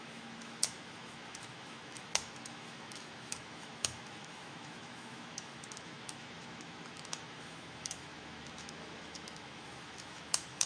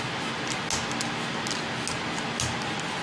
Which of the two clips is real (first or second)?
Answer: second